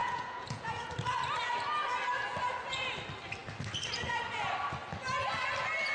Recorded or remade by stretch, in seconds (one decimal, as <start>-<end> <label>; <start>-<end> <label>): 0.0-0.9 remade; 0.9-5.9 recorded